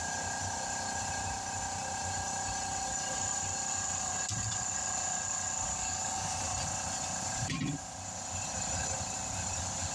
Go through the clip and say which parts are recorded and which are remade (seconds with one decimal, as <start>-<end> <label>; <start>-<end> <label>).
0.0-5.7 recorded; 5.7-6.4 remade; 6.4-9.9 recorded

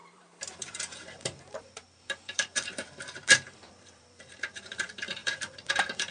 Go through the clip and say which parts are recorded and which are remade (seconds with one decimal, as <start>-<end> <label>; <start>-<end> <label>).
0.0-6.1 remade

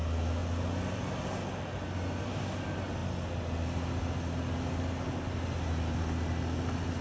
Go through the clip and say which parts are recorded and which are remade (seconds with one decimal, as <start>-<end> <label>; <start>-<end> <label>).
0.0-7.0 recorded

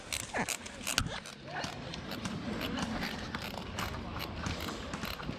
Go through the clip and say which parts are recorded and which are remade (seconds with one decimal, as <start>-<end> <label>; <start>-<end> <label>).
0.0-5.4 recorded